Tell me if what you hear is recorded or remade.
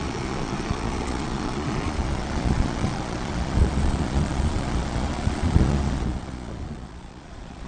remade